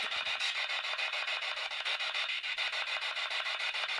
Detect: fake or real fake